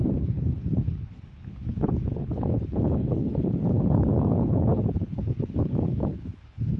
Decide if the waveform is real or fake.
fake